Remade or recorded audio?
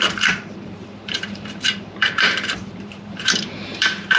remade